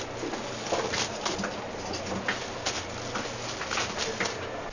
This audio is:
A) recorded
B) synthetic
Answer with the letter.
A